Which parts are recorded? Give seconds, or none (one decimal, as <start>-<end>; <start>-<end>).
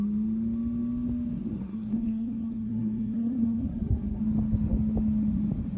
0.0-1.5; 4.2-5.8